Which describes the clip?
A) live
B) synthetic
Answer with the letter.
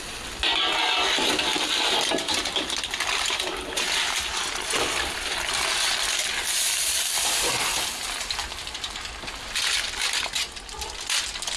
A